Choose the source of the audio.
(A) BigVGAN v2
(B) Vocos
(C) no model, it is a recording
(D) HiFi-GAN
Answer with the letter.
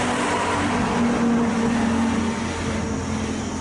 C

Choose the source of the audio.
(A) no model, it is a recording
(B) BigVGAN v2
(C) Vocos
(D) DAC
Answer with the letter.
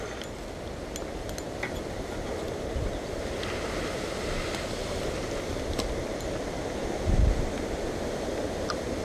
A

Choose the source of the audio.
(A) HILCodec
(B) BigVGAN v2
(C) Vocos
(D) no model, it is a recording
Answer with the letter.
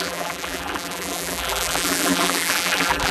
B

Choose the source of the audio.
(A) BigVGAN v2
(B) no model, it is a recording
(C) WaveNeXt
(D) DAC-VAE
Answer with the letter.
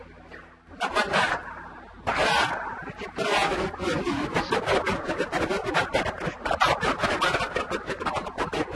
B